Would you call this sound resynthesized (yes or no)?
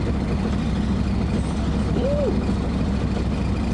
no